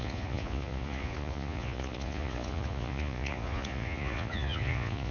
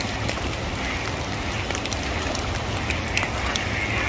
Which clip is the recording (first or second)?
second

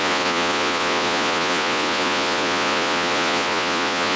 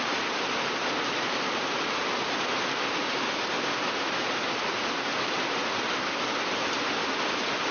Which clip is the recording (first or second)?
second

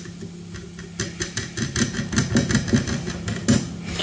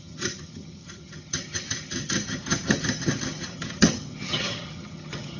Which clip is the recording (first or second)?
first